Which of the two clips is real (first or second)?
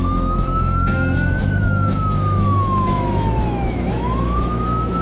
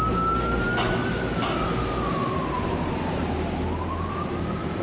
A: second